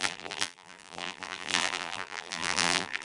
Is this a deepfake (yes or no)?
yes